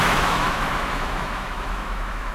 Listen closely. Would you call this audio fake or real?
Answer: fake